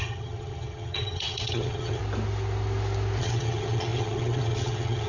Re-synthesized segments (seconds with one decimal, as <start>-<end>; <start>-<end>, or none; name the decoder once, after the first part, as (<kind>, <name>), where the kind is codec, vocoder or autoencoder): 0.0-2.0 (vocoder, HiFi-GAN); 3.2-5.1

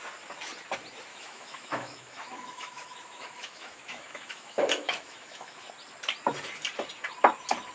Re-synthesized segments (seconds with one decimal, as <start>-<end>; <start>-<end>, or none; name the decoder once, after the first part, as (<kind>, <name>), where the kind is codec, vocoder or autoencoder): 1.1-5.7 (autoencoder, DAC-VAE)

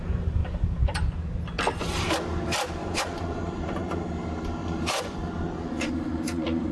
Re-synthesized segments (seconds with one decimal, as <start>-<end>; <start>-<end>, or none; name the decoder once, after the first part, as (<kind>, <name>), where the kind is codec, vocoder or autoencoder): 2.8-4.0 (vocoder, Vocos); 4.6-6.7

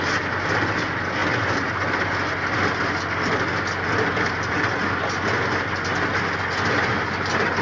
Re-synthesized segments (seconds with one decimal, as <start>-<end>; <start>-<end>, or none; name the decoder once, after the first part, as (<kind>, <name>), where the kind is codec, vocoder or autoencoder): none